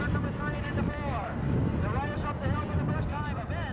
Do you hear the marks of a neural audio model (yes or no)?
no